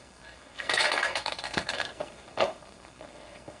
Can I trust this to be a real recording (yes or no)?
no